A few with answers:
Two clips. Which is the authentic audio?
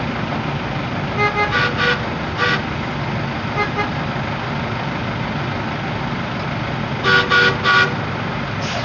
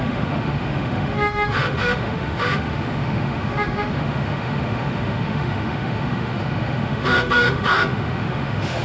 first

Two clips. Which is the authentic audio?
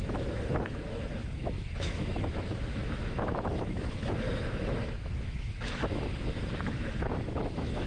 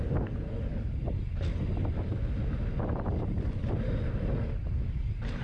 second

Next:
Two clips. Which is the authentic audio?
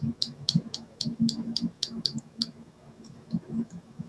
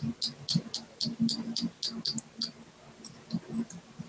second